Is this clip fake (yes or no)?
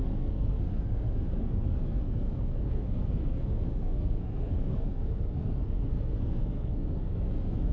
yes